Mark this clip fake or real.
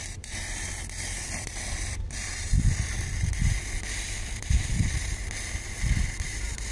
fake